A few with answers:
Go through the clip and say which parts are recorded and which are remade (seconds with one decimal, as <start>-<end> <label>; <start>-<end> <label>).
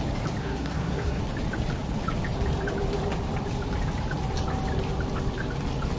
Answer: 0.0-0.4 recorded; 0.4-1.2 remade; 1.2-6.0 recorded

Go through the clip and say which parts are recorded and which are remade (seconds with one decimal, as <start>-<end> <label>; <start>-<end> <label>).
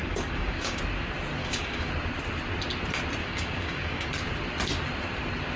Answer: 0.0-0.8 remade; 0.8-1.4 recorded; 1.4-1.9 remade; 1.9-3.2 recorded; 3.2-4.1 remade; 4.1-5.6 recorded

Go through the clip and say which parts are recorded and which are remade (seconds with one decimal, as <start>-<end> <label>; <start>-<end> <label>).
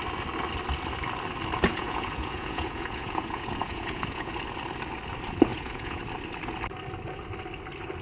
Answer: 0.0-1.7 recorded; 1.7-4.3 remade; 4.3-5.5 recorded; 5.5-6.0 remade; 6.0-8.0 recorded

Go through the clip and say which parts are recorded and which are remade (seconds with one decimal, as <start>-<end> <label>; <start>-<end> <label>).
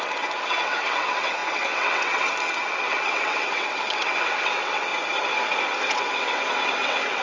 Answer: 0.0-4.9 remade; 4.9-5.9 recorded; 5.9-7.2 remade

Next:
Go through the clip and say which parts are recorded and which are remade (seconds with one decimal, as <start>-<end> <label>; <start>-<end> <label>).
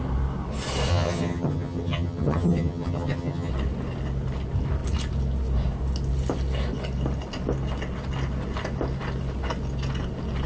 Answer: 0.0-0.9 recorded; 0.9-3.5 remade; 3.5-10.5 recorded